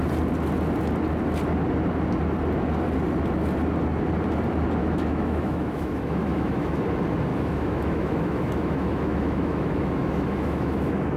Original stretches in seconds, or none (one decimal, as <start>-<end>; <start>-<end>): 0.0-4.8; 6.8-7.3